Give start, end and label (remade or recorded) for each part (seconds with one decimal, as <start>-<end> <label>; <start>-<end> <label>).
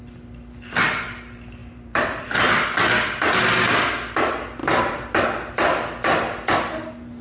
0.0-1.6 recorded; 1.6-2.5 remade; 2.5-4.6 recorded; 4.6-5.2 remade; 5.2-7.2 recorded